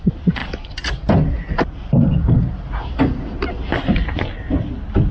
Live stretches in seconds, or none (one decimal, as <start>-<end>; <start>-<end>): 0.0-5.1

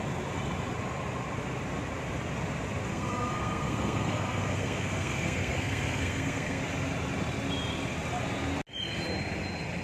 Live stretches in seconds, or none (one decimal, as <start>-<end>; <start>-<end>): 0.0-2.9; 6.6-9.8

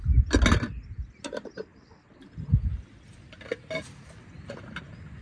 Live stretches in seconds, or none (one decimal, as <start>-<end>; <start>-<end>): 0.0-5.2

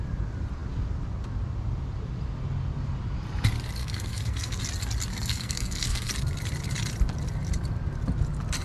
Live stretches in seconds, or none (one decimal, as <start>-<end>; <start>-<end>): 0.0-3.8; 4.6-5.1; 6.1-8.6

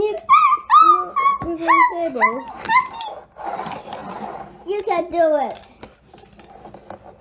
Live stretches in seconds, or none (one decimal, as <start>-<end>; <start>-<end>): 0.0-7.2

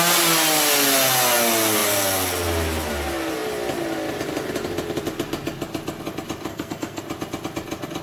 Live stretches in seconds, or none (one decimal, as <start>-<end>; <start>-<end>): 0.0-6.5; 7.0-8.0